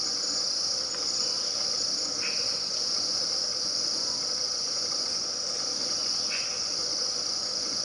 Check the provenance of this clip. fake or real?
fake